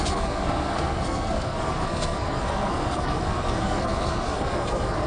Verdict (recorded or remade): remade